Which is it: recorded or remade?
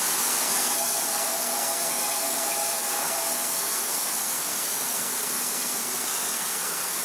remade